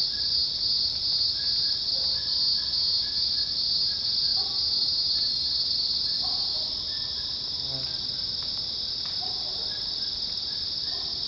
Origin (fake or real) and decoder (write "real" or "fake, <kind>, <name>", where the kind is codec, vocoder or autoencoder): real